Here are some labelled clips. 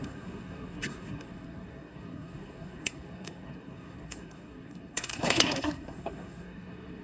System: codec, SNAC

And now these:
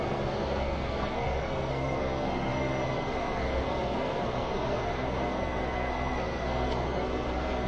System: codec, SNAC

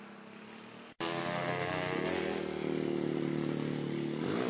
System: none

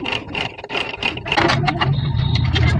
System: none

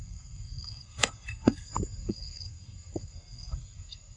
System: codec, SNAC